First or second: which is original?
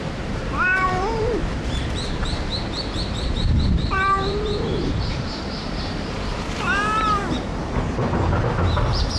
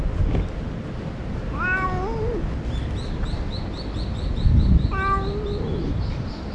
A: second